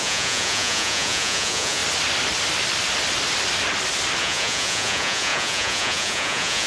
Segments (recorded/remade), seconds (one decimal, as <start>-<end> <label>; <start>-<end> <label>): 0.0-1.8 remade; 1.8-4.2 recorded; 4.2-6.7 remade